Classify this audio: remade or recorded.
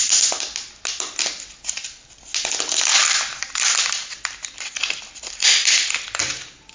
recorded